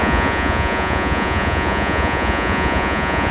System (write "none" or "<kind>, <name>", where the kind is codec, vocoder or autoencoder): vocoder, Vocos